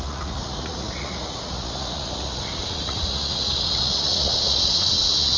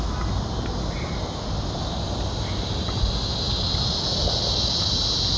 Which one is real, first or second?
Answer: second